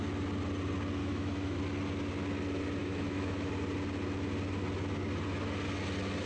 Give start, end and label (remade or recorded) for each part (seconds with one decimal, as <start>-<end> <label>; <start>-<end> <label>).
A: 0.0-1.0 recorded; 1.0-1.6 remade; 1.6-2.8 recorded; 2.8-3.5 remade; 3.5-6.3 recorded